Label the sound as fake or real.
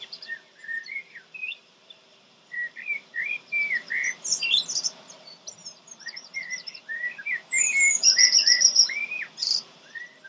fake